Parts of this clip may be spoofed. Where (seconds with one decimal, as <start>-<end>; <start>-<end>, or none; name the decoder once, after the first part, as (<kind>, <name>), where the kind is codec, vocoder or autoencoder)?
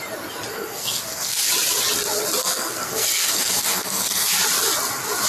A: 0.5-1.4 (codec, SNAC); 2.4-4.3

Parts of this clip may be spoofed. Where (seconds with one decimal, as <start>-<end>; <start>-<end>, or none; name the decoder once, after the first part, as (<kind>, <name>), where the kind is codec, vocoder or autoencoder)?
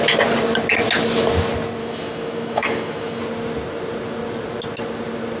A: 1.8-3.2 (autoencoder, DAC-VAE)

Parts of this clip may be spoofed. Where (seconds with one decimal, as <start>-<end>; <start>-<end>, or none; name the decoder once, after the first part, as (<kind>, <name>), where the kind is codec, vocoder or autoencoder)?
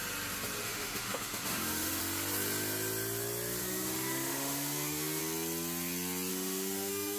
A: 0.6-2.0 (autoencoder, DAC-VAE); 3.6-5.2; 6.3-7.2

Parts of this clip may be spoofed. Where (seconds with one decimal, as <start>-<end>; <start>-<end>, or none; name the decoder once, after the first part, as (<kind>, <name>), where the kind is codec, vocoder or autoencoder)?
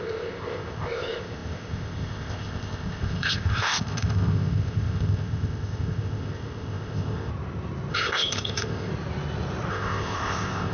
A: 0.0-7.3 (codec, ZipCodec); 7.9-8.9; 9.7-10.7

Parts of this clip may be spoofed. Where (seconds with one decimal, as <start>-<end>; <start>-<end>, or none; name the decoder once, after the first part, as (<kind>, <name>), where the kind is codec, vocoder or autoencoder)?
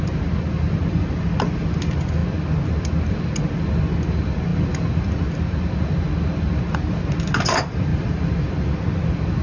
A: 7.9-8.5 (vocoder, BigVGAN v2)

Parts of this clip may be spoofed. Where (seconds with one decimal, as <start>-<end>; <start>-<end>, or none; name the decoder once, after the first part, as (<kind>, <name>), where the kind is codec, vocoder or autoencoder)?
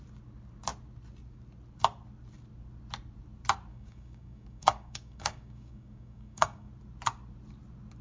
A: 3.7-6.7 (codec, DAC)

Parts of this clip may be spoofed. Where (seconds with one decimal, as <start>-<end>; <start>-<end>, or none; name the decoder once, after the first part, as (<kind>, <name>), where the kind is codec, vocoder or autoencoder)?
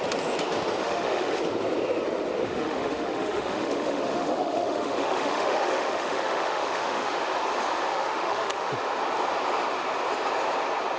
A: 0.8-1.4 (autoencoder, DAC-VAE); 2.4-7.2; 7.9-8.7